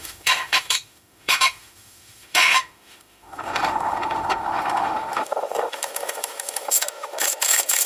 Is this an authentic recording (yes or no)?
no